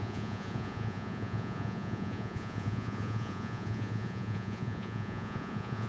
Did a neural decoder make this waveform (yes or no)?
yes